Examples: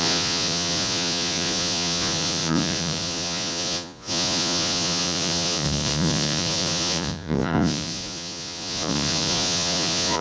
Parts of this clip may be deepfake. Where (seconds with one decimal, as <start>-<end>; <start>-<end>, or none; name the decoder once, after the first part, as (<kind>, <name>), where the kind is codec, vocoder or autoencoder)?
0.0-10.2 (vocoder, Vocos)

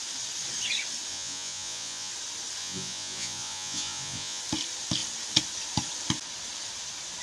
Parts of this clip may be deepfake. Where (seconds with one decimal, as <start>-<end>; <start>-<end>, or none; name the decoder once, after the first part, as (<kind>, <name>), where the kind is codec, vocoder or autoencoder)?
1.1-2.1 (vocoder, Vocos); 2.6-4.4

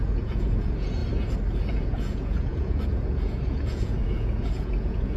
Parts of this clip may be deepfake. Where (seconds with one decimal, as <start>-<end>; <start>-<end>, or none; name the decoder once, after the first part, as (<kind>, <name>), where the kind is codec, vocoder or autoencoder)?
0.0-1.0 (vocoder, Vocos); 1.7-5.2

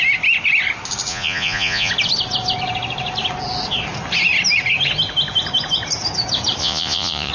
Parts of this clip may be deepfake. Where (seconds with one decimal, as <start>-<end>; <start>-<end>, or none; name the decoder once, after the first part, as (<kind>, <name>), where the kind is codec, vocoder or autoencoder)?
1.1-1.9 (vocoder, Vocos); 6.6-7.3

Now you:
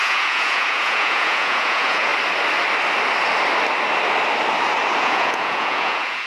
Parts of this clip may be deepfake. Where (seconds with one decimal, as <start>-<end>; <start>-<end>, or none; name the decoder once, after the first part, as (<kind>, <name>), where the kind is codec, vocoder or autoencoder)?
0.0-2.1 (vocoder, Vocos); 5.0-6.3

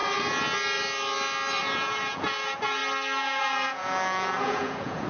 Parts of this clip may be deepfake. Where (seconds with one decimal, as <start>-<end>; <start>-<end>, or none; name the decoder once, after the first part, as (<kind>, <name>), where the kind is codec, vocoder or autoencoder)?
1.6-2.8 (vocoder, Vocos); 3.4-5.1

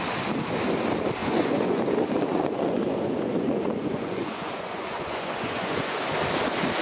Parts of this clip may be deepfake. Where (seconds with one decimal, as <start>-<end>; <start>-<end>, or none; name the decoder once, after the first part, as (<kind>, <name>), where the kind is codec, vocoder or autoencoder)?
1.2-1.8 (vocoder, Vocos); 2.3-6.0